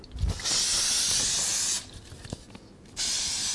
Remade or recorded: recorded